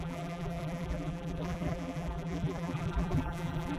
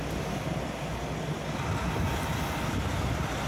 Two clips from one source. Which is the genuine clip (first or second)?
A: second